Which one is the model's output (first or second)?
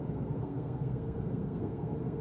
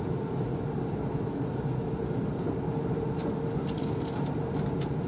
first